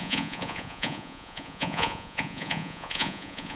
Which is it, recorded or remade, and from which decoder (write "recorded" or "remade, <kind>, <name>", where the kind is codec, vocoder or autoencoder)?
remade, vocoder, Vocos